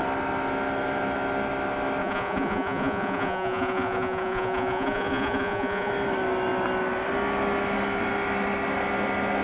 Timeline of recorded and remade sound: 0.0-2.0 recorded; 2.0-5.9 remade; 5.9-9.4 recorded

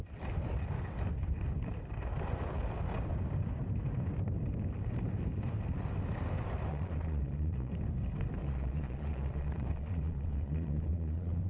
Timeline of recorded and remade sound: 0.0-6.7 recorded; 6.7-7.7 remade; 7.7-8.4 recorded; 8.4-11.5 remade